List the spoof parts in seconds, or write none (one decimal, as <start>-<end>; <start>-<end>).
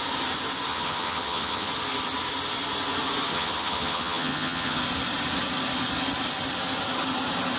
0.7-1.7; 3.3-4.8